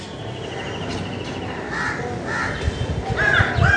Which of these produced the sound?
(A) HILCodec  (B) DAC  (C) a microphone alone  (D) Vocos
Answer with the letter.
C